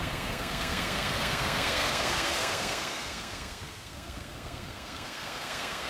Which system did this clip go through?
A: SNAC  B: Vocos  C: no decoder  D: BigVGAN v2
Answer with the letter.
A